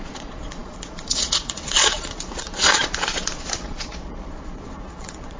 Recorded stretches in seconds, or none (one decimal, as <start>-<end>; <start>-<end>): none